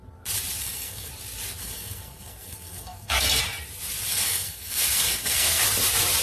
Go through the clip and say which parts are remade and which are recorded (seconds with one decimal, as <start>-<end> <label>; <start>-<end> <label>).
0.0-0.6 recorded; 0.6-1.1 remade; 1.1-1.6 recorded; 1.6-3.4 remade; 3.4-4.1 recorded; 4.1-5.6 remade; 5.6-6.2 recorded